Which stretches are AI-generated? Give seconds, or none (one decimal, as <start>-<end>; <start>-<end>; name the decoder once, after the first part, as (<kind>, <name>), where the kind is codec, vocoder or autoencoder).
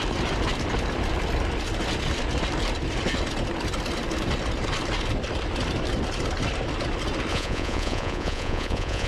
7.3-9.1 (vocoder, Vocos)